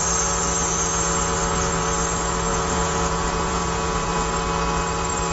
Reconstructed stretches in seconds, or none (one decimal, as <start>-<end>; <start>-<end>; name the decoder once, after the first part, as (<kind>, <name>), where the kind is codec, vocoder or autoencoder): 2.5-4.2 (vocoder, Vocos)